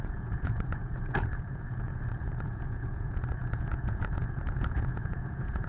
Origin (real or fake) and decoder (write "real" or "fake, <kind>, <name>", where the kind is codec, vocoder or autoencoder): fake, vocoder, Vocos